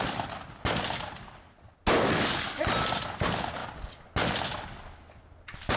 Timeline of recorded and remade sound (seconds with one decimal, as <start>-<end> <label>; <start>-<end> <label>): 0.0-5.8 recorded